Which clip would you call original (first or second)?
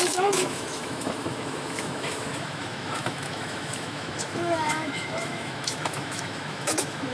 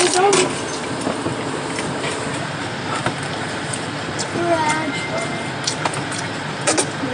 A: second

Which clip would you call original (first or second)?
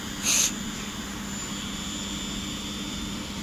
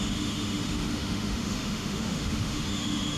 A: first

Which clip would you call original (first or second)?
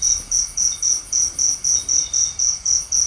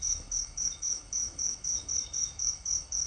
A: first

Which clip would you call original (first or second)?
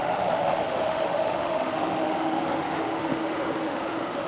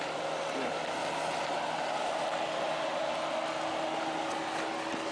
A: second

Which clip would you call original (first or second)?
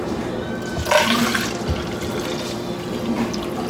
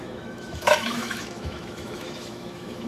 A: first